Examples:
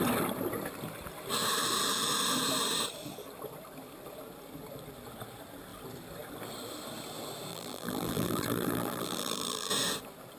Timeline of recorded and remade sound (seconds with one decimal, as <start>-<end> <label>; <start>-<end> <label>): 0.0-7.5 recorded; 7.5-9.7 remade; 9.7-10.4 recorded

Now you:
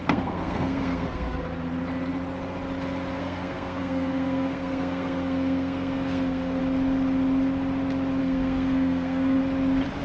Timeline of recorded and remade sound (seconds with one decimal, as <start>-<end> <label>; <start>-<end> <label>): 0.0-1.4 remade; 1.4-3.2 recorded; 3.2-6.6 remade; 6.6-8.2 recorded; 8.2-9.4 remade; 9.4-10.0 recorded

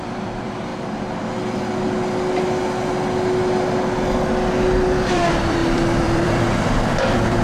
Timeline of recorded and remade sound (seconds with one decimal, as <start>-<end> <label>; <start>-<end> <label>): 0.0-0.7 remade; 0.7-5.1 recorded; 5.1-7.4 remade

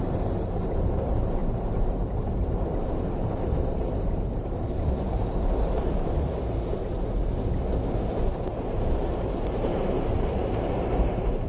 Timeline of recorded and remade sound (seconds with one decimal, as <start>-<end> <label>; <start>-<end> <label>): 0.0-1.4 remade; 1.4-2.2 recorded; 2.2-7.3 remade; 7.3-8.2 recorded; 8.2-11.5 remade

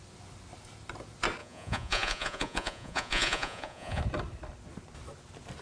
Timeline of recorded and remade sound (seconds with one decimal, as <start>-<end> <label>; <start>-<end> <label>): 0.0-1.4 recorded; 1.4-4.0 remade; 4.0-5.6 recorded

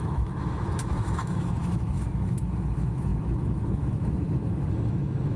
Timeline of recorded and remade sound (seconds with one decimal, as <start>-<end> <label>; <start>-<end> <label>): 0.0-5.4 remade